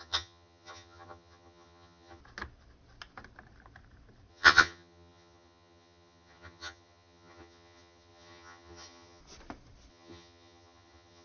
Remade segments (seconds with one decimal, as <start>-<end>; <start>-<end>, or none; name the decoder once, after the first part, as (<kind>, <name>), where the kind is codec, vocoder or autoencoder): 0.0-2.2 (vocoder, HiFi-GAN); 4.3-9.2; 9.9-11.2